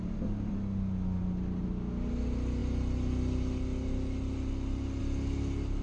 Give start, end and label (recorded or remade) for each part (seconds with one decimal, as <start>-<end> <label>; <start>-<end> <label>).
0.0-5.8 recorded